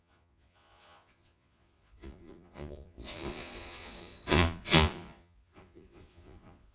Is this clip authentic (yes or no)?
no